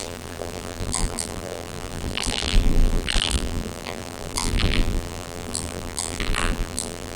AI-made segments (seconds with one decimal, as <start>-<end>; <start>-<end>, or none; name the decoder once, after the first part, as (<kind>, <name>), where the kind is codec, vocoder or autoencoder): 0.0-7.2 (vocoder, BigVGAN v2)